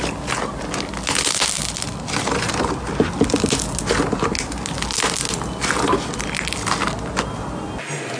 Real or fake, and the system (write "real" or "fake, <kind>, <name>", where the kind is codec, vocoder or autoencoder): real